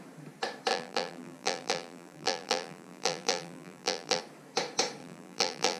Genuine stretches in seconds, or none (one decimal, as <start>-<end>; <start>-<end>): 0.0-0.7; 4.2-5.0